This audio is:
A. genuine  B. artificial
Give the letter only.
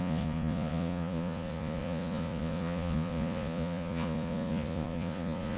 B